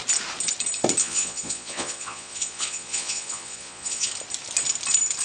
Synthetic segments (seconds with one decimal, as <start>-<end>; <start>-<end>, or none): 1.0-4.1